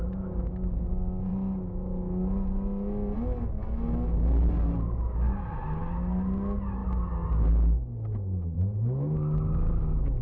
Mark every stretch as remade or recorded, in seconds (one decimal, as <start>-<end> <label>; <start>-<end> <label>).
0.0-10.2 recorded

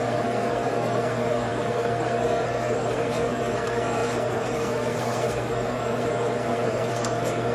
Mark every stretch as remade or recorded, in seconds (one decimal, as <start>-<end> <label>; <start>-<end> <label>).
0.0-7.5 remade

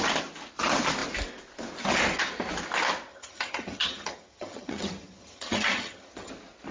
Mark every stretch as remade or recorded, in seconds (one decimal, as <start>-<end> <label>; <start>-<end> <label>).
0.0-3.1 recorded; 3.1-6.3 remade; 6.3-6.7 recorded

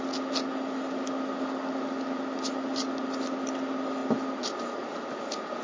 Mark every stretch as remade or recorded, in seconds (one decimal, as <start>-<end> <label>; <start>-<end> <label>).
0.0-5.6 recorded

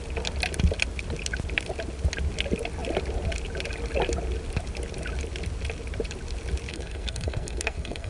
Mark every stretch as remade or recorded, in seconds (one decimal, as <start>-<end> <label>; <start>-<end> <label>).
0.0-6.7 recorded; 6.7-8.1 remade